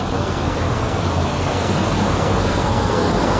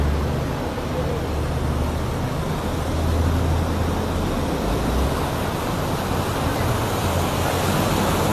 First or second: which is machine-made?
first